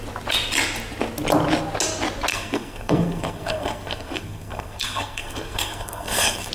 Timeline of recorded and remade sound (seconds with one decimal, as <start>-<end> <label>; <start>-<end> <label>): 0.0-2.3 recorded; 2.3-6.5 remade